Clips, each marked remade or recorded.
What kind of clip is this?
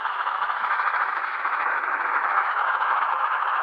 remade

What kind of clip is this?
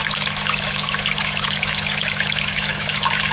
remade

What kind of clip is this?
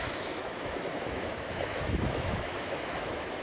remade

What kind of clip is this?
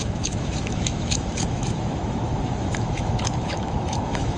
remade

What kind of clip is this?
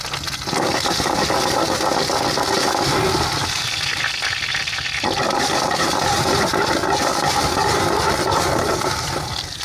recorded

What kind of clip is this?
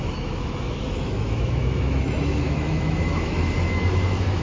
remade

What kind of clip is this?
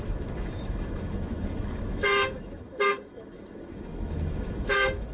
remade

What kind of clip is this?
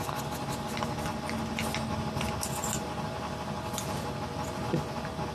recorded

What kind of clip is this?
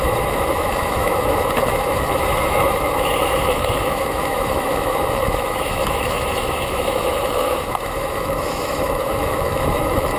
remade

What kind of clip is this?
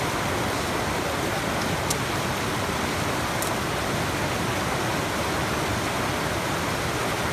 recorded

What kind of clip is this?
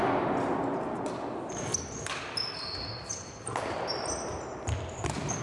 recorded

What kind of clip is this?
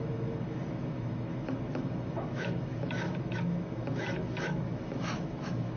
remade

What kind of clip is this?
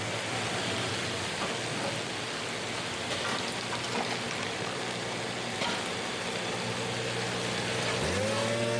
recorded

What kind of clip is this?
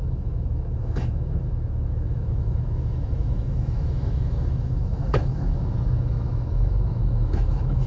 remade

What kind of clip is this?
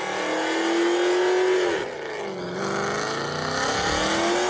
recorded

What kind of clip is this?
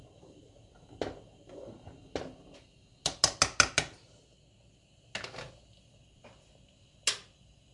recorded